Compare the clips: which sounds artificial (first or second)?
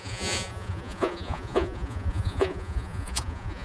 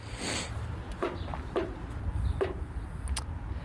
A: first